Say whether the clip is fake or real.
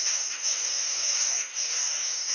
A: fake